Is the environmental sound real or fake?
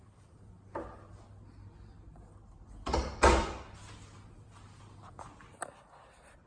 real